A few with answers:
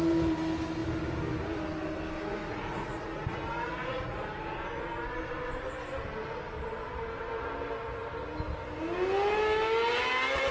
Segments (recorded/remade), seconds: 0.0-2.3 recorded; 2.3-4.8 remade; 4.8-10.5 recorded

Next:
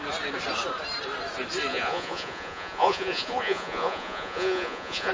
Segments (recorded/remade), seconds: 0.0-1.7 recorded; 1.7-5.1 remade

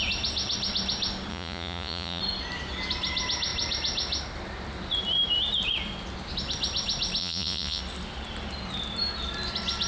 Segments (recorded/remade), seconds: 0.0-1.3 recorded; 1.3-2.2 remade; 2.2-7.2 recorded; 7.2-7.8 remade; 7.8-9.9 recorded

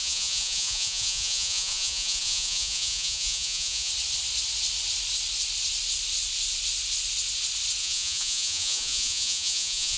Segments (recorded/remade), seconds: 0.0-3.9 remade; 3.9-7.8 recorded; 7.8-10.0 remade

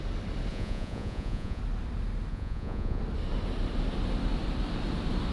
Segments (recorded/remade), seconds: 0.0-0.5 recorded; 0.5-1.6 remade; 1.6-2.3 recorded; 2.3-3.0 remade; 3.0-5.3 recorded

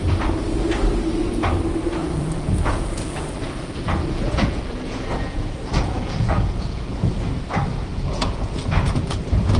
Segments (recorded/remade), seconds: 0.0-2.0 recorded; 2.0-7.1 remade; 7.1-7.9 recorded; 7.9-9.2 remade; 9.2-9.6 recorded

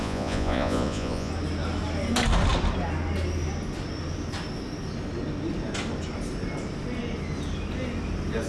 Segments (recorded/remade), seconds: 0.0-1.3 remade; 1.3-8.5 recorded